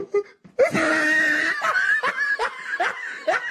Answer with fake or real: real